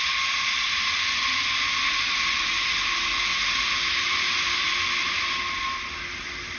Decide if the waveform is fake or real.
real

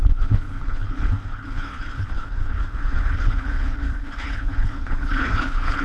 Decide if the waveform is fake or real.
fake